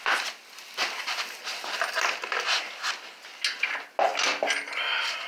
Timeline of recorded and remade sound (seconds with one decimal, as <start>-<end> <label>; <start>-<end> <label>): 0.0-5.3 recorded